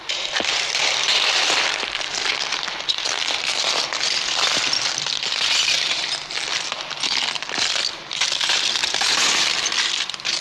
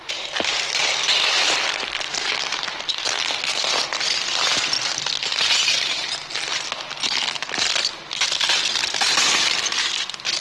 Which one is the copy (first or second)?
first